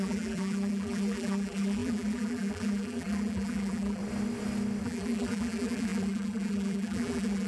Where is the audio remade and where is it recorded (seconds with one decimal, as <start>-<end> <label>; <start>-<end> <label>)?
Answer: 0.0-4.0 remade; 4.0-4.8 recorded; 4.8-7.5 remade